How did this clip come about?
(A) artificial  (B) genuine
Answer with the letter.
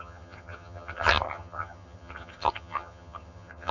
A